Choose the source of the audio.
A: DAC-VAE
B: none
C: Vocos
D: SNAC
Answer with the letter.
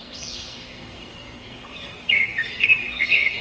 D